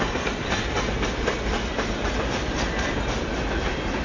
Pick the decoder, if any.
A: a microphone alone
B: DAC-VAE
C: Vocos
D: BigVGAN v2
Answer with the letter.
D